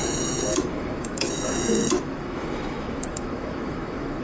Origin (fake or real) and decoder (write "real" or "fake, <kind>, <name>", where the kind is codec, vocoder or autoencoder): fake, autoencoder, DAC-VAE